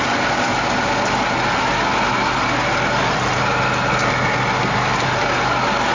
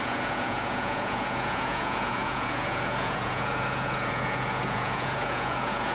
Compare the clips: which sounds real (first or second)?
first